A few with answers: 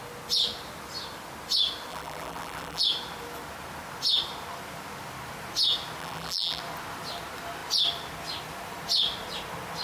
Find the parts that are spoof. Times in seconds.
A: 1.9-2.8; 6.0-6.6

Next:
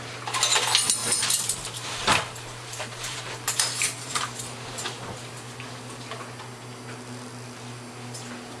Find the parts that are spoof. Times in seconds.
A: 1.0-4.3

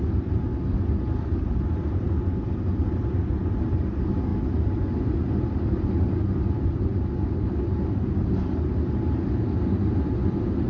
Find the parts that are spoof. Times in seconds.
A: none

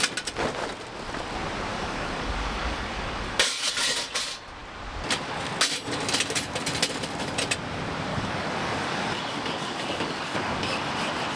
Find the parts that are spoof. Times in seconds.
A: 1.7-3.7; 8.1-10.9